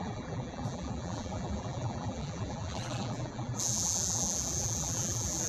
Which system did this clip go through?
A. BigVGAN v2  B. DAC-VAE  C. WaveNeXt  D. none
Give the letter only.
A